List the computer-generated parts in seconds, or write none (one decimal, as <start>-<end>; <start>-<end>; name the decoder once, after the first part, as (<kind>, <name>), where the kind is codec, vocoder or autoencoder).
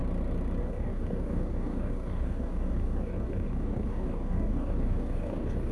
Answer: 0.6-5.7 (codec, DAC)